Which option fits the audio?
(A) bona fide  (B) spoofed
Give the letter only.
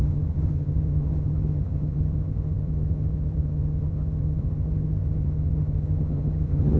B